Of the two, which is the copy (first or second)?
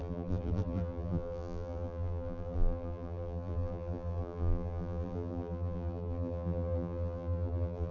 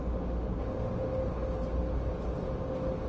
first